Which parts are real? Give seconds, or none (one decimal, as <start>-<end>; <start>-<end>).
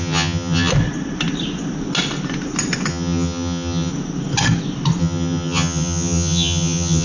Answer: 0.7-2.9; 3.9-5.0